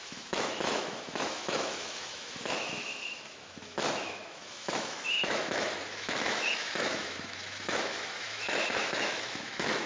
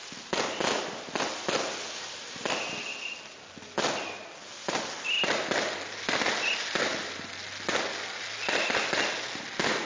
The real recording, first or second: second